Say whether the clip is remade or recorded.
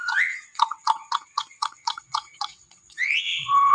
remade